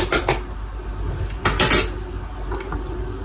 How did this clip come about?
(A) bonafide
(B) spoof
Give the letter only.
A